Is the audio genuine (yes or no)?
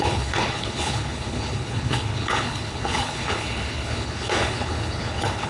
no